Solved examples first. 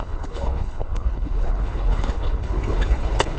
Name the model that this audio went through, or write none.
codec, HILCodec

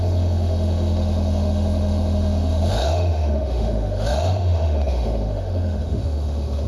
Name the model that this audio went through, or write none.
autoencoder, DAC-VAE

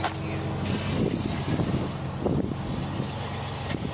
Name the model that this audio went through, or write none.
none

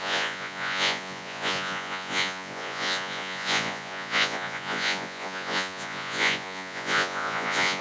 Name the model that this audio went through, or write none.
vocoder, Vocos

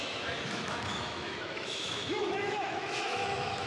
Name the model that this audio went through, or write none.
autoencoder, DAC-VAE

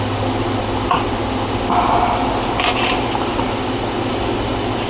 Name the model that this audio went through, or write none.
none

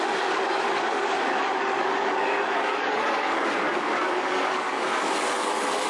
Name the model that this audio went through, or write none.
codec, DAC